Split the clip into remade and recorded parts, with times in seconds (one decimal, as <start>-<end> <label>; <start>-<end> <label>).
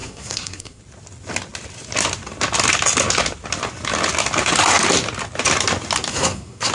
0.0-0.8 remade; 0.8-6.1 recorded; 6.1-6.7 remade